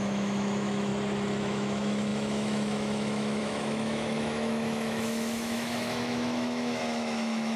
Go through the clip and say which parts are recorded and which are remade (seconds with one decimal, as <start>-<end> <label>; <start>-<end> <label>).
0.0-0.9 remade; 0.9-1.4 recorded; 1.4-7.6 remade